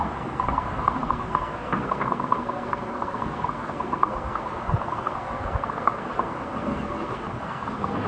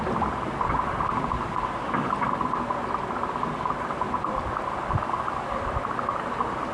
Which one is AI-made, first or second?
first